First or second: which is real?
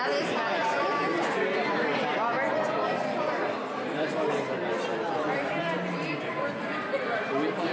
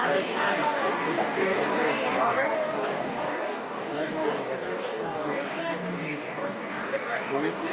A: first